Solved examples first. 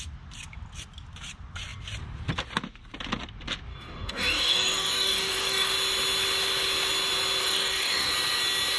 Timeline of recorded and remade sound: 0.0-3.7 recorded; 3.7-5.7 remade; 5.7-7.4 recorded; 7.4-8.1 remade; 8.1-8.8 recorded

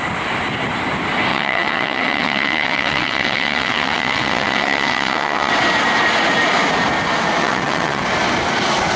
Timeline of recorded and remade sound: 0.0-1.3 recorded; 1.3-5.5 remade; 5.5-7.4 recorded; 7.4-8.0 remade; 8.0-9.0 recorded

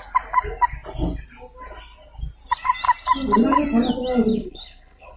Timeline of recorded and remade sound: 0.0-4.3 recorded; 4.3-5.2 remade

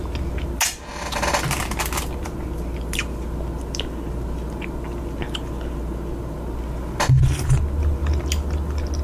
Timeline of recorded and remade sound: 0.0-9.0 recorded